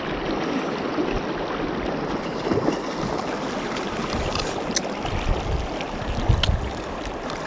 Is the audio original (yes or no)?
yes